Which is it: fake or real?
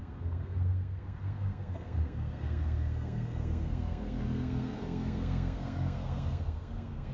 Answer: fake